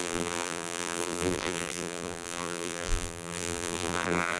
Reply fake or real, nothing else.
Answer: fake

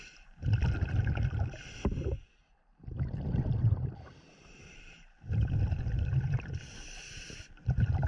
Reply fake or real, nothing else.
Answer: fake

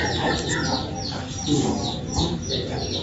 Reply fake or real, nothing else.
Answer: real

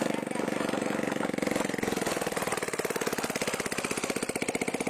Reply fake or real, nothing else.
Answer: real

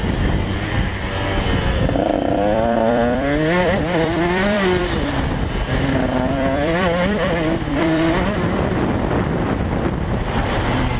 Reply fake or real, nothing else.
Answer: fake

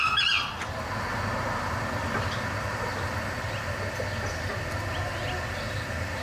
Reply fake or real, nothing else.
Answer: real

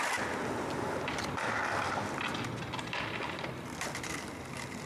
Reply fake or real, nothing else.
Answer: real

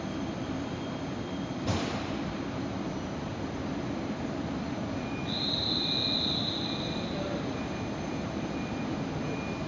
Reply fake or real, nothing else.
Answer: fake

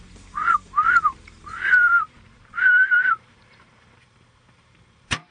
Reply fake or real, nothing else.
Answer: fake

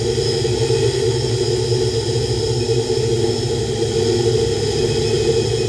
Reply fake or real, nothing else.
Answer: real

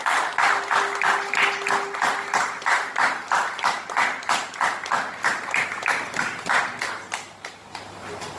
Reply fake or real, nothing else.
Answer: real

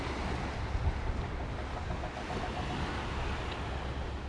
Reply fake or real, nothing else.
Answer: real